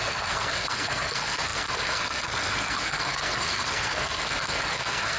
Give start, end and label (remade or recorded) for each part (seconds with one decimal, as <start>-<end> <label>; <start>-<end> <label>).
0.0-5.2 remade